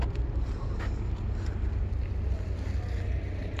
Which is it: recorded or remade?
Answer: recorded